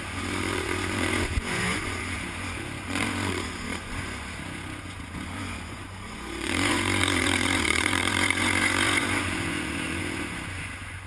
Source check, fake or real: fake